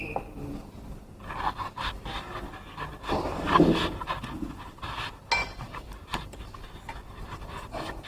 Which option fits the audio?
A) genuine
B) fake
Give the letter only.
A